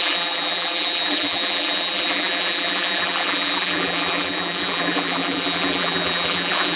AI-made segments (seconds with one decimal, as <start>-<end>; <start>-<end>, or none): 0.0-6.8